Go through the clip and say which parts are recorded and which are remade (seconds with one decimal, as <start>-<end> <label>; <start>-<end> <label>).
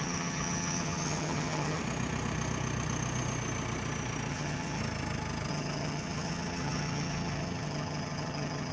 0.0-1.8 remade; 1.8-4.3 recorded; 4.3-4.8 remade; 4.8-5.5 recorded; 5.5-8.7 remade